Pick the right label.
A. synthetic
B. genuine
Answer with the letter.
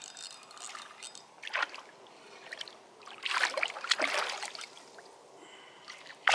B